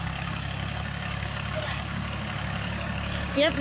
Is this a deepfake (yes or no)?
yes